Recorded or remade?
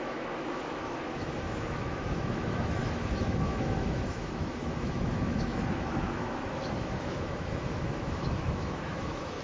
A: remade